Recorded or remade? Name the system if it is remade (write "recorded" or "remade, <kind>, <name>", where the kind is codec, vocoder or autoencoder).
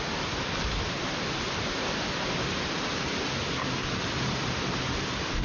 recorded